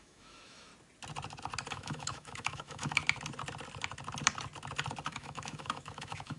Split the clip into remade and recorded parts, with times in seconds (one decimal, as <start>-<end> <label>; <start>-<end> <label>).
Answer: 0.0-0.7 remade; 0.7-1.7 recorded; 1.7-3.0 remade; 3.0-5.1 recorded; 5.1-6.4 remade

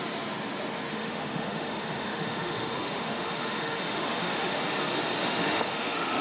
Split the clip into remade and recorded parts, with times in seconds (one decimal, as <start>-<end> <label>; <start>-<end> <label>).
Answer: 0.0-0.9 recorded; 0.9-4.6 remade; 4.6-5.2 recorded; 5.2-6.2 remade

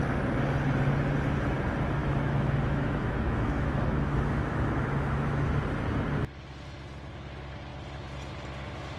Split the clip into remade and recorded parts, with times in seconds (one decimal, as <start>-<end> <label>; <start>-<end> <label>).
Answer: 0.0-2.0 recorded; 2.0-5.5 remade; 5.5-9.0 recorded

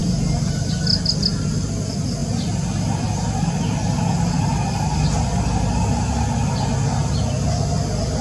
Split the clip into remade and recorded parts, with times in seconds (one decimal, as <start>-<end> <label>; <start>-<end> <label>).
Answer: 0.0-8.2 recorded

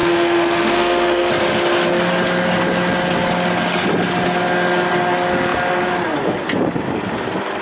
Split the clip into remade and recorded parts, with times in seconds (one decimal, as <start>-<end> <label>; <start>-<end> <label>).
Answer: 0.0-1.3 remade; 1.3-7.6 recorded

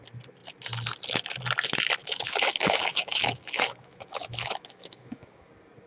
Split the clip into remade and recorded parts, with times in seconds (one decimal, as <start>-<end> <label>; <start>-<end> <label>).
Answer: 0.0-2.0 recorded; 2.0-5.5 remade; 5.5-5.9 recorded

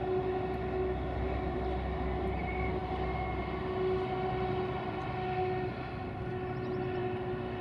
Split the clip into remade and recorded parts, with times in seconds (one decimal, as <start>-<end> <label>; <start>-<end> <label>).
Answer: 0.0-7.6 recorded

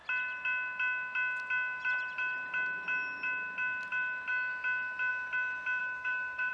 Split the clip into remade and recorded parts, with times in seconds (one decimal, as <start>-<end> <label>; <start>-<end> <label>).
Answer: 0.0-5.8 recorded; 5.8-6.5 remade